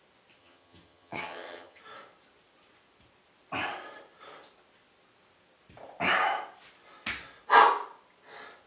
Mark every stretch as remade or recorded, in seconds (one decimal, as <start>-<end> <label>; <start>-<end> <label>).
0.0-0.4 recorded; 0.4-1.8 remade; 1.8-8.7 recorded